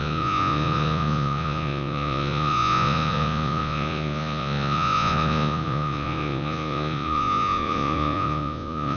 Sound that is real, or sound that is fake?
fake